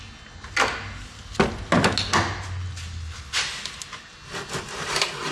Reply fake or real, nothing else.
real